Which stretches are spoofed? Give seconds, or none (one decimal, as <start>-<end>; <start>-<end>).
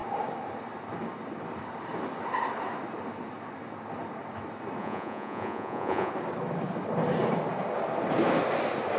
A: 4.8-6.1